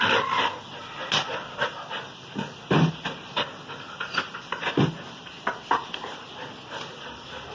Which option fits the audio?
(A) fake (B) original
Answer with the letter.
B